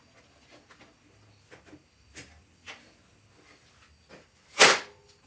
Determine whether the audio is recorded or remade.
recorded